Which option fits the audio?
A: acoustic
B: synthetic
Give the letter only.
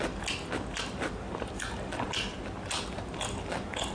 A